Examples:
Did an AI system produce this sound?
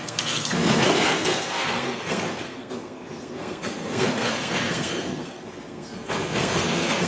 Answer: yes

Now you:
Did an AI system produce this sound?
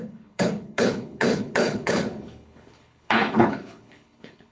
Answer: yes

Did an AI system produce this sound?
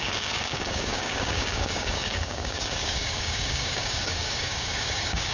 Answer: yes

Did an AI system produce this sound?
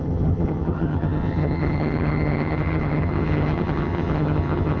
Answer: yes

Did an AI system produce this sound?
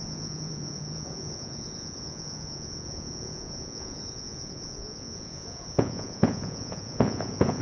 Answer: yes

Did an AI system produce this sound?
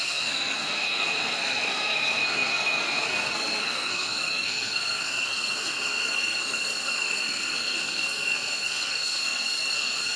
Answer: yes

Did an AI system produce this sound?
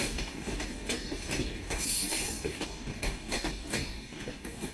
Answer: yes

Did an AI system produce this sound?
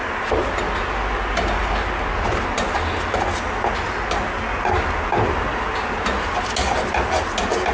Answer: no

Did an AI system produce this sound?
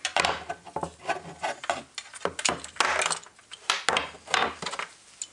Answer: no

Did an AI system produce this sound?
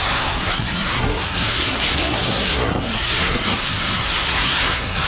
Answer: yes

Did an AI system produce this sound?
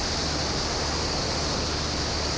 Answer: no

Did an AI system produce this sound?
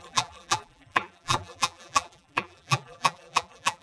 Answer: yes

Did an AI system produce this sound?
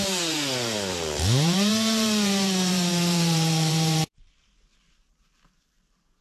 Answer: yes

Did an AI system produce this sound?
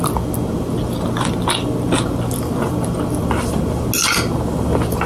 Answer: no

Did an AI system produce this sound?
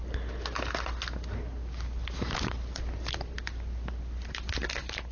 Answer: no